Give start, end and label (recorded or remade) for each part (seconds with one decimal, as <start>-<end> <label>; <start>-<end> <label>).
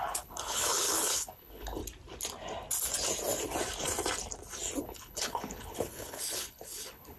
0.0-1.8 remade; 1.8-4.8 recorded; 4.8-7.2 remade